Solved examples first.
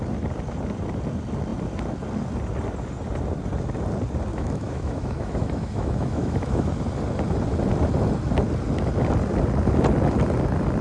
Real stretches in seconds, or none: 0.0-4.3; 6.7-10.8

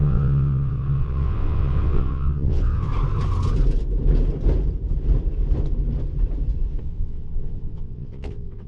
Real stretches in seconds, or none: 2.9-6.8

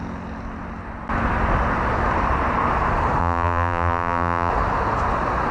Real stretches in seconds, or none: 0.0-3.2; 4.5-5.5

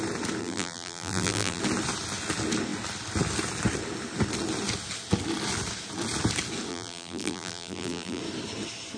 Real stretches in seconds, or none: 0.0-0.4; 1.6-6.7; 8.2-9.0

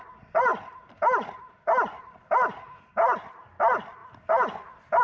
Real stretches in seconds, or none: 0.0-5.0

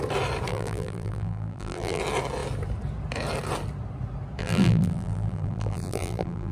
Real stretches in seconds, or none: 0.0-0.5; 2.0-4.4

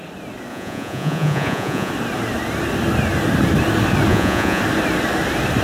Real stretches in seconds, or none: 0.0-0.5; 1.9-4.1; 4.6-5.6

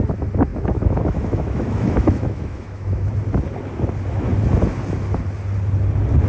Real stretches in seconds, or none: 0.0-0.5; 3.1-6.3